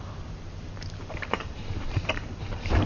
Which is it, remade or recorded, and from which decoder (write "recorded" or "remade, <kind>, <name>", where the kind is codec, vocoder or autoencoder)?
remade, vocoder, BigVGAN v2